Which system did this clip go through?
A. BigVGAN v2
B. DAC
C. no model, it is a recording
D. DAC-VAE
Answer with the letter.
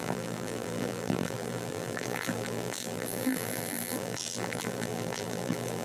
A